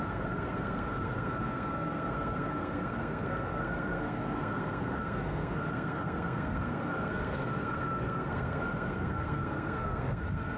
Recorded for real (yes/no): no